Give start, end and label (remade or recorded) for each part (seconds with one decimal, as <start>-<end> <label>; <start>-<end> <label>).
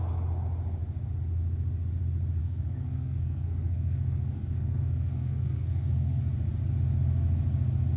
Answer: 0.0-2.4 recorded; 2.4-6.2 remade; 6.2-8.0 recorded